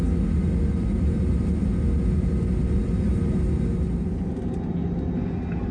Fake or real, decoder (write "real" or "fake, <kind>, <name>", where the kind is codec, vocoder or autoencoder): real